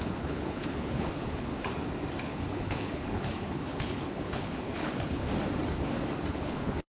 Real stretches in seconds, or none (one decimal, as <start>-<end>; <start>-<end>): 1.5-2.2; 5.2-6.3